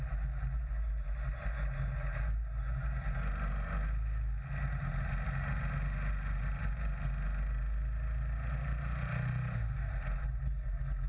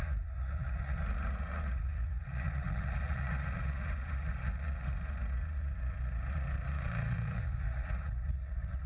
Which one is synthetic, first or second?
second